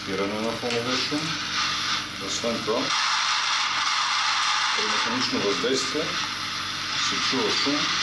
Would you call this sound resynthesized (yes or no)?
no